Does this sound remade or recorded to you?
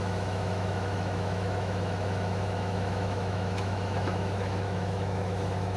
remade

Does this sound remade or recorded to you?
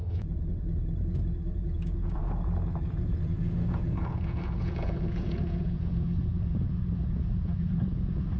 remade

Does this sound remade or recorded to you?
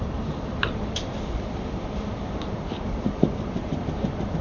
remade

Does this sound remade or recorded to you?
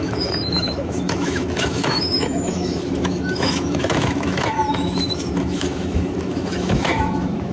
remade